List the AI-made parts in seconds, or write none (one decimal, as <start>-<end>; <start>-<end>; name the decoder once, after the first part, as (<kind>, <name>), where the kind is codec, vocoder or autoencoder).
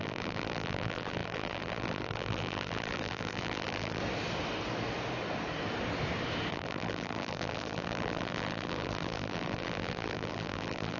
0.0-4.0 (vocoder, BigVGAN v2); 6.5-11.0